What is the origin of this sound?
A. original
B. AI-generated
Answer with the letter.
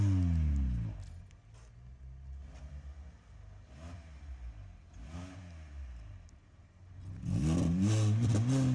A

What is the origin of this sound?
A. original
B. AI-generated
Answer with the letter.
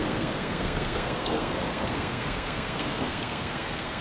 B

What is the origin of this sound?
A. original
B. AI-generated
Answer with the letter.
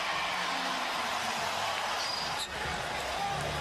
A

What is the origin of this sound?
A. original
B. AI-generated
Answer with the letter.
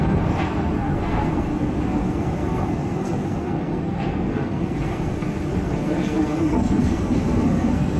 B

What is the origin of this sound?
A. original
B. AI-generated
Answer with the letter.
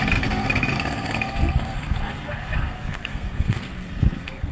B